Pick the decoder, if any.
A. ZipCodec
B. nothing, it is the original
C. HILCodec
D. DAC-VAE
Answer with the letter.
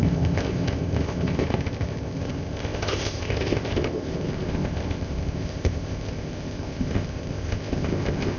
A